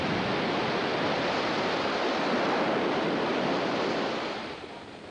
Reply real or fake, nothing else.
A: fake